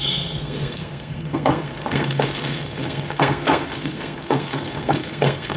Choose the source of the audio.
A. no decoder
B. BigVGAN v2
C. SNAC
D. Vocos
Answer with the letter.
C